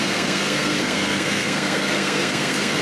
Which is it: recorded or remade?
remade